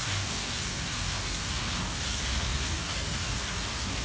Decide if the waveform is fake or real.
fake